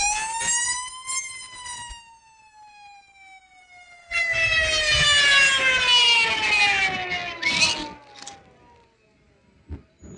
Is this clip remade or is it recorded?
recorded